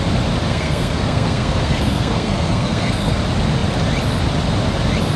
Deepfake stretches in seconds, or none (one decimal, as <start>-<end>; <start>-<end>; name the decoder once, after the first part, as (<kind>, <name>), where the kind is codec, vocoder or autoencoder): 0.5-3.2 (codec, SNAC)